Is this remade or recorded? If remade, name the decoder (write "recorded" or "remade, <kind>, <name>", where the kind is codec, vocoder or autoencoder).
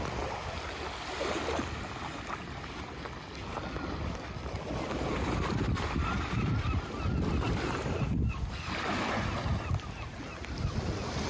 recorded